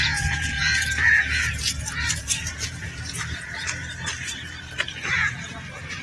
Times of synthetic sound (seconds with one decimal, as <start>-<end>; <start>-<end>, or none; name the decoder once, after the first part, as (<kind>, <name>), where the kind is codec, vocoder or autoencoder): 0.0-3.8 (vocoder, Vocos); 5.1-6.0